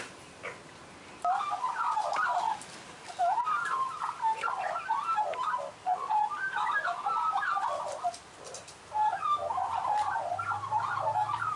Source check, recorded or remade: recorded